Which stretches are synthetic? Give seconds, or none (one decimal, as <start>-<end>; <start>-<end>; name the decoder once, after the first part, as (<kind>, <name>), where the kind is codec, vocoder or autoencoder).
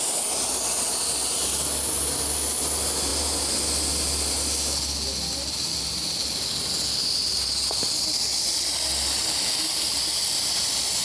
none